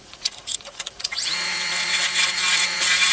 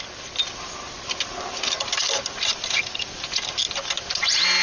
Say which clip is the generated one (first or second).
first